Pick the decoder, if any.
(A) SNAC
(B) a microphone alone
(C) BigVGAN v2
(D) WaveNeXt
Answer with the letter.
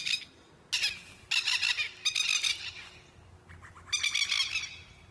B